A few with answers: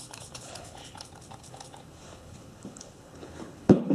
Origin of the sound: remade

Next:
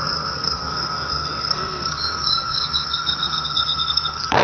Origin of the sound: remade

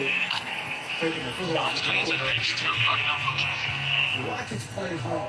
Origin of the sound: remade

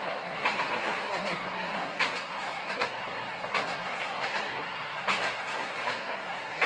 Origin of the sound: remade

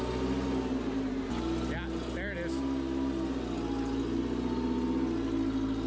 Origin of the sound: recorded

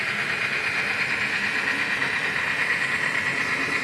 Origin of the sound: recorded